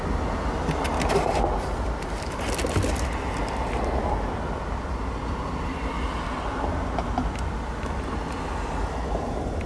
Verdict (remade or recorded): recorded